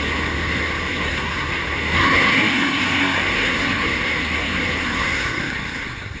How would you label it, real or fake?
fake